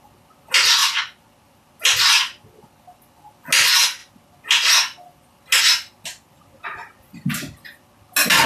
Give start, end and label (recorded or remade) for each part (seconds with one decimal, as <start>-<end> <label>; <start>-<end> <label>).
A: 0.0-8.5 recorded